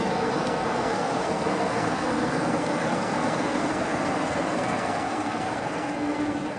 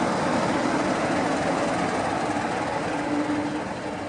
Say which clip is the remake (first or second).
first